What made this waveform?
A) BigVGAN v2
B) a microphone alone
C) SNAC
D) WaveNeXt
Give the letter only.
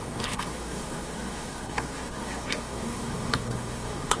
C